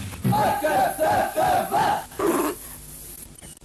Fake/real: fake